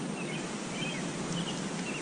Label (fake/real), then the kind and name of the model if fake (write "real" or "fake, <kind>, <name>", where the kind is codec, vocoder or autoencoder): real